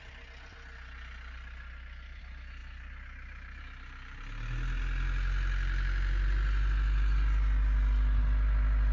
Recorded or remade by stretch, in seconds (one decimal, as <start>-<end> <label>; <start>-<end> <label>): 0.0-8.9 recorded